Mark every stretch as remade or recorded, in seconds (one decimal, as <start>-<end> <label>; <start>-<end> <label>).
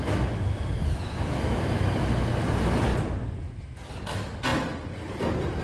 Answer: 0.0-2.0 remade; 2.0-5.6 recorded